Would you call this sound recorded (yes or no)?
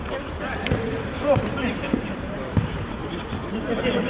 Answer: no